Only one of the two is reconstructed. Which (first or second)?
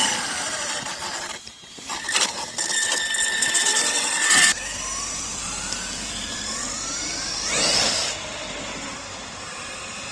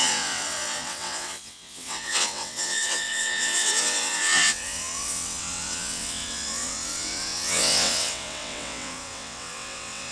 second